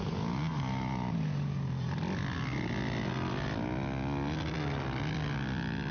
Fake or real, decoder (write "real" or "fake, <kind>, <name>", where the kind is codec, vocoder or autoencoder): real